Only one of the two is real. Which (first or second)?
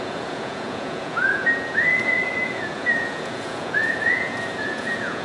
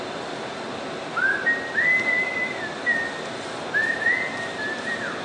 second